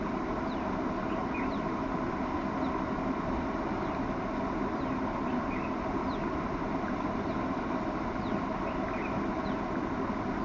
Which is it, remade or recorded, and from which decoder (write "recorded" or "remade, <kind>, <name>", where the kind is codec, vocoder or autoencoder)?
recorded